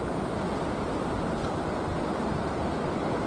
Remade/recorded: recorded